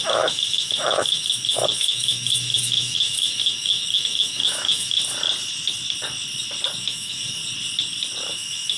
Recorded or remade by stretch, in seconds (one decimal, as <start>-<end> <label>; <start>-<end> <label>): 0.0-5.0 remade; 5.0-6.8 recorded; 6.8-7.4 remade; 7.4-8.3 recorded; 8.3-8.8 remade